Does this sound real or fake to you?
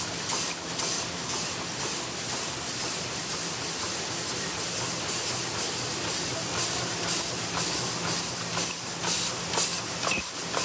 real